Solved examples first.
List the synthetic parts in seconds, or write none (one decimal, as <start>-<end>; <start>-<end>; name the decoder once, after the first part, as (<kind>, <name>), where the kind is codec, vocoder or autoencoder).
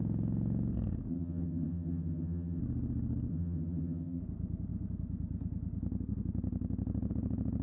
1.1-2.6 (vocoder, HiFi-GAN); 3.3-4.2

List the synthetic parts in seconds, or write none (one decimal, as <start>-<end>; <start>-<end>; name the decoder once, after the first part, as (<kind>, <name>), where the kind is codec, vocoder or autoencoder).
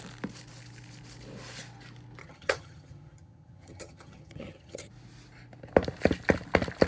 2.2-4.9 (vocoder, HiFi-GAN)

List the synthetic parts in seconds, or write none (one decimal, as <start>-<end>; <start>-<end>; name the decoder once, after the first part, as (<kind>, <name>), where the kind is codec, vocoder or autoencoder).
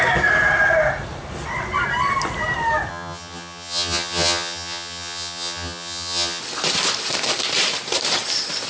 2.9-6.4 (vocoder, HiFi-GAN)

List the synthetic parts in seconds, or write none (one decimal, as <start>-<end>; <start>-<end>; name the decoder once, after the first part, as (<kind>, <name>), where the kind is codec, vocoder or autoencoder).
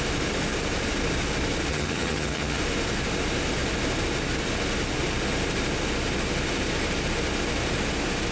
1.7-2.6 (vocoder, HiFi-GAN)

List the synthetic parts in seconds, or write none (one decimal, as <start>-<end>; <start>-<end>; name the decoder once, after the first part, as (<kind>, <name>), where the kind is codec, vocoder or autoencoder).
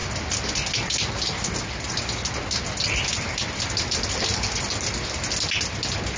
none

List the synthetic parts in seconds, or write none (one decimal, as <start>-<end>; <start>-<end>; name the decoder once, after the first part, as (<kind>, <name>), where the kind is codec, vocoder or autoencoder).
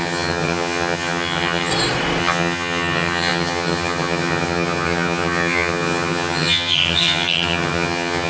0.0-1.7 (vocoder, HiFi-GAN); 2.2-8.3